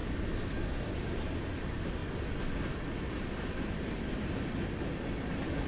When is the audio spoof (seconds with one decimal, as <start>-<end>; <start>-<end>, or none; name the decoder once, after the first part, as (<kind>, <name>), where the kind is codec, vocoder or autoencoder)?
none